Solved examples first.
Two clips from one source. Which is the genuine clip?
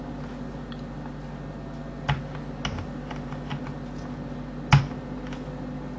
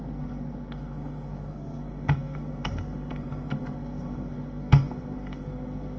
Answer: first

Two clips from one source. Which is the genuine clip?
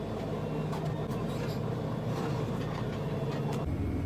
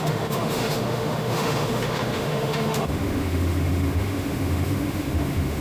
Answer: first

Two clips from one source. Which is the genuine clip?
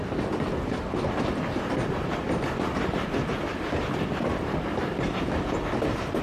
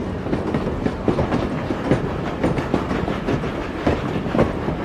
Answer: second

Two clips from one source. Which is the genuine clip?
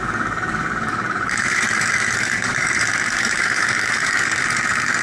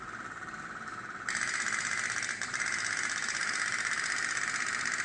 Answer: second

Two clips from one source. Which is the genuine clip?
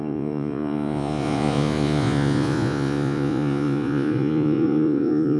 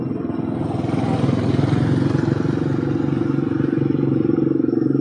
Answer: second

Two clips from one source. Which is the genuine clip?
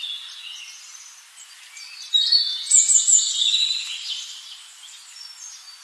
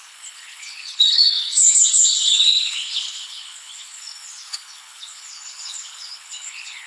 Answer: first